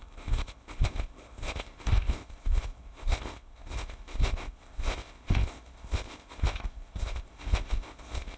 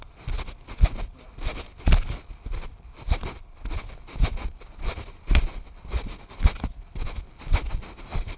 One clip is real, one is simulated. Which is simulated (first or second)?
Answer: first